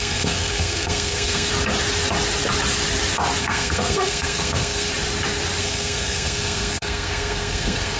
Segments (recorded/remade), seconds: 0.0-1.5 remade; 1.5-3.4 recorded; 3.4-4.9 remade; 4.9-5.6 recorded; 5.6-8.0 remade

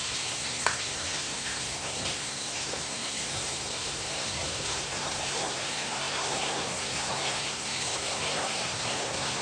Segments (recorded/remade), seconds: 0.0-9.4 remade

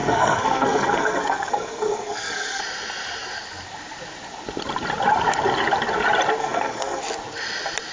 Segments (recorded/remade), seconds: 0.0-2.6 remade; 2.6-6.4 recorded; 6.4-7.0 remade; 7.0-7.9 recorded

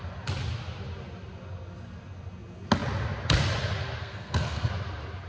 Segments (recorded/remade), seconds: 0.0-4.0 recorded; 4.0-4.7 remade; 4.7-5.3 recorded

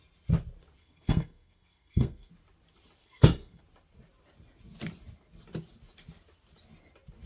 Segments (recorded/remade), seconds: 0.0-0.8 recorded; 0.8-2.3 remade; 2.3-3.0 recorded; 3.0-3.6 remade; 3.6-7.3 recorded